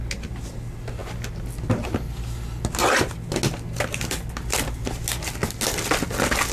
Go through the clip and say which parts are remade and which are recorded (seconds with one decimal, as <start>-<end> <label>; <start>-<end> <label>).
0.0-6.5 recorded